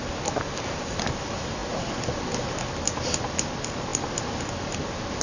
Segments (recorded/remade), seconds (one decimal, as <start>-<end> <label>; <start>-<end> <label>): 0.0-5.2 recorded

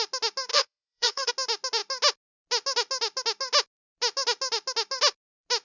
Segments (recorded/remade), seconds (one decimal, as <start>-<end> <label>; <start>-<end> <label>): 0.0-0.5 recorded; 0.5-1.3 remade; 1.3-5.6 recorded